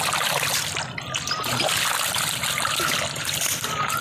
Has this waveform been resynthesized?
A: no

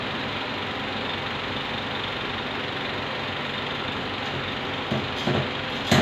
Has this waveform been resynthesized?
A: no